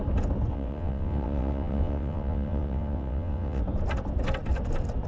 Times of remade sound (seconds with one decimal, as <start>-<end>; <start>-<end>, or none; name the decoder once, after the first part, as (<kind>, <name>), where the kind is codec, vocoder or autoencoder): 0.5-3.6 (vocoder, WaveNeXt)